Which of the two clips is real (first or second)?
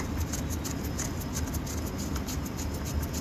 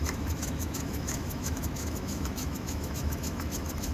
first